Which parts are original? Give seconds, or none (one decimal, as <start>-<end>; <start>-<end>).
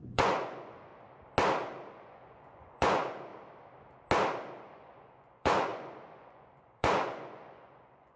0.9-1.9; 3.3-4.6